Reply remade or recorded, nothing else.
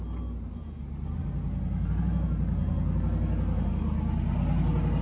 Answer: recorded